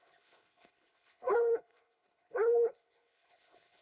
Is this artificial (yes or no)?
yes